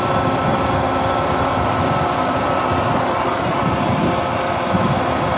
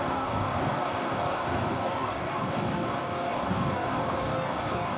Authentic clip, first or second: first